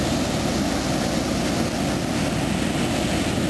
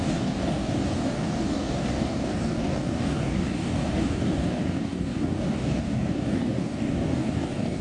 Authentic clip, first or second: first